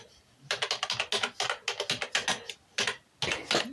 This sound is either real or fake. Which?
real